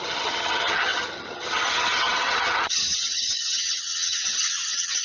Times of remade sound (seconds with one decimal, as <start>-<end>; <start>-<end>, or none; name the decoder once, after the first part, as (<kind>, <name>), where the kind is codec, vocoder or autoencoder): 0.0-5.0 (vocoder, HiFi-GAN)